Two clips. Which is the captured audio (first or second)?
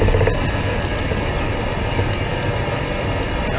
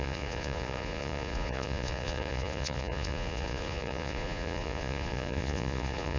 first